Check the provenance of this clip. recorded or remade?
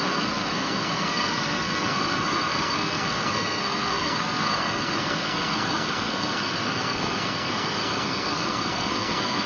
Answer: remade